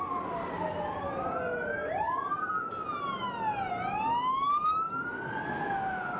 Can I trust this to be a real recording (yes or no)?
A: yes